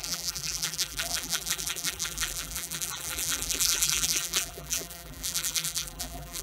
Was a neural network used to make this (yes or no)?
yes